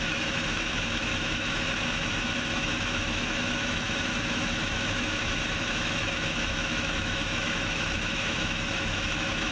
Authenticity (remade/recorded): remade